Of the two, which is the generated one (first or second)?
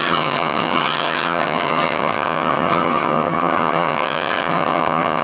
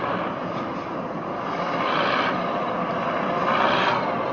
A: first